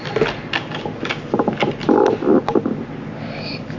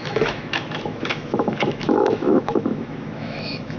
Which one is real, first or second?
first